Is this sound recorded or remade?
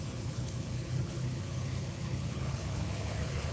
remade